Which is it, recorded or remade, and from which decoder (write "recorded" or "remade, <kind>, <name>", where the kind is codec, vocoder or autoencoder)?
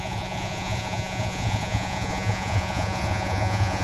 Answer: remade, vocoder, Vocos